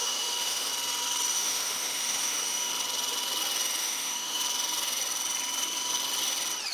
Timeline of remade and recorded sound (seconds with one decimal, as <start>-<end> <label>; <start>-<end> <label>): 0.0-0.7 remade; 0.7-1.3 recorded; 1.3-2.7 remade; 2.7-3.8 recorded; 3.8-4.4 remade; 4.4-6.7 recorded